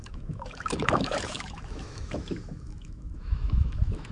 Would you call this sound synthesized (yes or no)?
yes